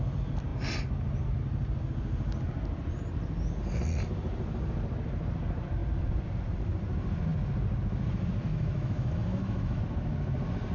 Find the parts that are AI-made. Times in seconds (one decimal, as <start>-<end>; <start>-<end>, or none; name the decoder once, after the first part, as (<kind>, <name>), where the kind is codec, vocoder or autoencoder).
8.5-9.8 (autoencoder, DAC-VAE)